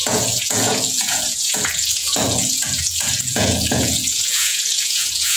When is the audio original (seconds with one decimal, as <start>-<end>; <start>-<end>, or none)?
none